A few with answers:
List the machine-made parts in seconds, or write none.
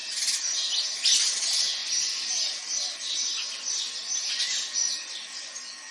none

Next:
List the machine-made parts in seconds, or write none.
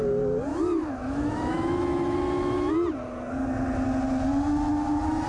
0.5-2.7 (autoencoder, DAC-VAE)